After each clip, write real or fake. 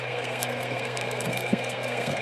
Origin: fake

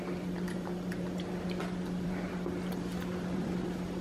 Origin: fake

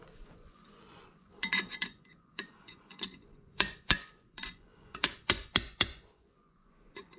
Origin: fake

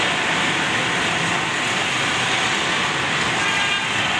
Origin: real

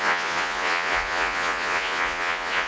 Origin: fake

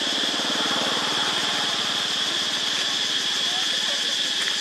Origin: real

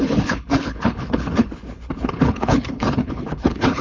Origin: fake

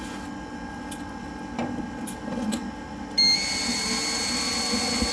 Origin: real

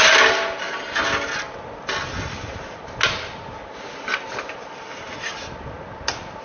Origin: real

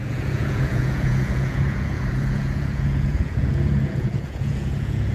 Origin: fake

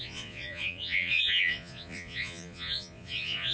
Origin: fake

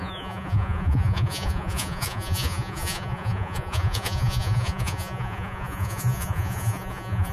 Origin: fake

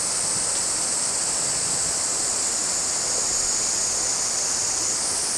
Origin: real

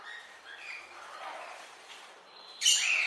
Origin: fake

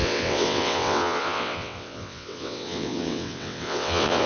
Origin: fake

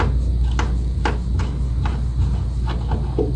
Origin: real